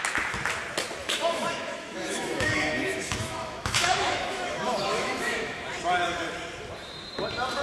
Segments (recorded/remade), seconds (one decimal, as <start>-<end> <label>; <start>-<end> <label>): 0.0-1.0 recorded; 1.0-5.6 remade; 5.6-7.6 recorded